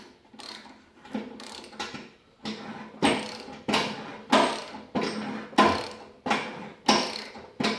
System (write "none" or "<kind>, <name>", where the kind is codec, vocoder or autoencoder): none